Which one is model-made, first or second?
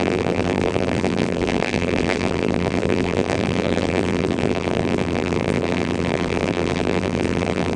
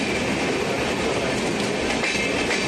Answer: first